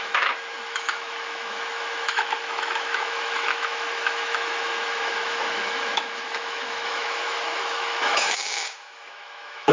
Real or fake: fake